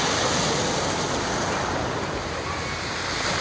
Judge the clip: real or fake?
real